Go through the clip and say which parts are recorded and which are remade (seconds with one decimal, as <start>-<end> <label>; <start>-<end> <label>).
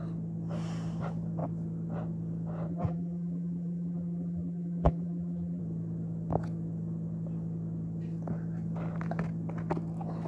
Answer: 0.0-2.7 recorded; 2.7-5.6 remade; 5.6-10.3 recorded